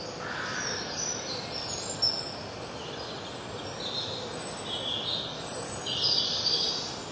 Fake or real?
real